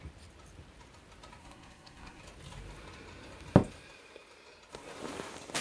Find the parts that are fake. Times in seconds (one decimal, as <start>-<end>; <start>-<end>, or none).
1.4-2.2

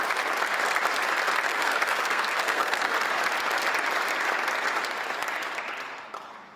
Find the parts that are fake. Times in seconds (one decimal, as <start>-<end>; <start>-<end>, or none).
1.5-2.9

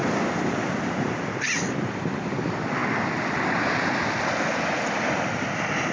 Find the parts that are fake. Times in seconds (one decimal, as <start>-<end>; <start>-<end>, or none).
2.8-5.9

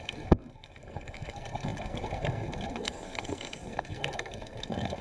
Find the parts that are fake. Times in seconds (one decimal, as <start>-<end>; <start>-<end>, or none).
0.0-5.0

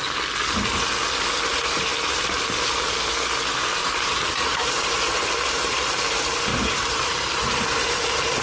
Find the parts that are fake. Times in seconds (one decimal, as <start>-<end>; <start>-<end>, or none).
3.8-5.2; 6.5-7.4

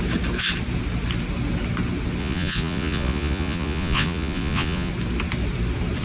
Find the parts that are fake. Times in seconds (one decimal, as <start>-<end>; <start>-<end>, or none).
2.2-4.9